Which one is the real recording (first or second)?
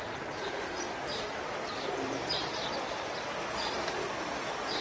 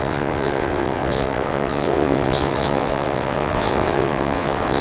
first